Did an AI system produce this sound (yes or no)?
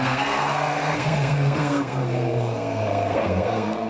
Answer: yes